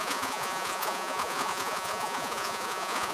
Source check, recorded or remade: remade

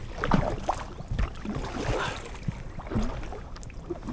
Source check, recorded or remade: recorded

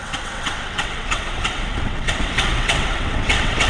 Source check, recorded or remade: remade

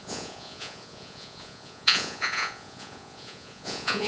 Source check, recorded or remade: remade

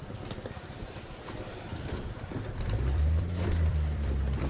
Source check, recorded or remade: remade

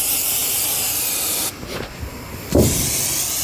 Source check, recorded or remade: recorded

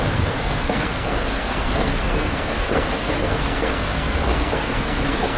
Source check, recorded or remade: remade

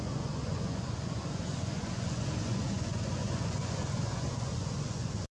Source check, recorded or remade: remade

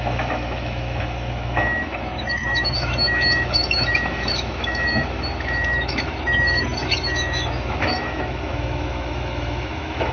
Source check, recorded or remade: remade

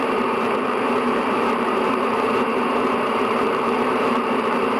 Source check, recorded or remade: remade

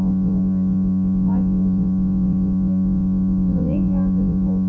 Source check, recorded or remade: remade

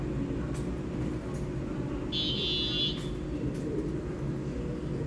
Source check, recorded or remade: recorded